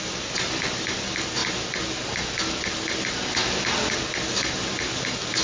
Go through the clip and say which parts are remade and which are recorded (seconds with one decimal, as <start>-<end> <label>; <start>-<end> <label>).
0.0-5.4 recorded